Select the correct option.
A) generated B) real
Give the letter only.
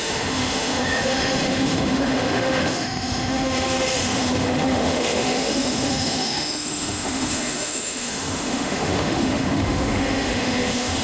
A